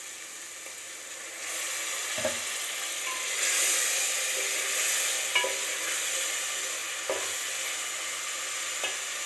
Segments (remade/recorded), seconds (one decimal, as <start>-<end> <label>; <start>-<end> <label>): 0.0-9.3 recorded